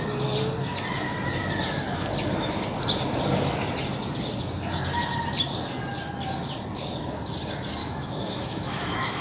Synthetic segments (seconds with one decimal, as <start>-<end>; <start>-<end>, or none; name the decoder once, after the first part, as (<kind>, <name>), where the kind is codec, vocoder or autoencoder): 7.8-9.2 (autoencoder, DAC-VAE)